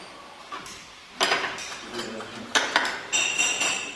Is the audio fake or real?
fake